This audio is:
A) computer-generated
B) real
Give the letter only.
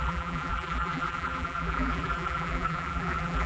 A